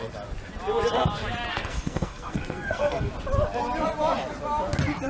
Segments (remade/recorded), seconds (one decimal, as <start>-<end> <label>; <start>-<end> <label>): 0.0-1.5 recorded; 1.5-3.1 remade; 3.1-5.1 recorded